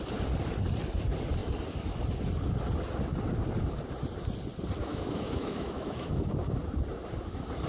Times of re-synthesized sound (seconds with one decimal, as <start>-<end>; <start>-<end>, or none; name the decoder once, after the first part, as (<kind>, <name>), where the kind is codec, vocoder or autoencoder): 4.8-6.3 (autoencoder, DAC-VAE)